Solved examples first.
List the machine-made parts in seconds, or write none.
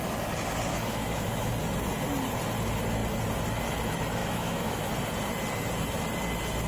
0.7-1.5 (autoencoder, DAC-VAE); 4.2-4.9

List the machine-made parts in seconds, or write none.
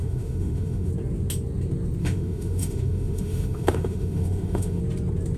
0.0-0.9 (autoencoder, DAC-VAE); 2.0-4.8